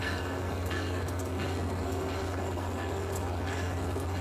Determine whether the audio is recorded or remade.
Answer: remade